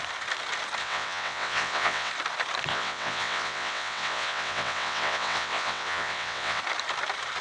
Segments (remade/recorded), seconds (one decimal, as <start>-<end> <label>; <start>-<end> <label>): 0.0-0.8 recorded; 0.8-2.1 remade; 2.1-2.7 recorded; 2.7-6.6 remade; 6.6-7.4 recorded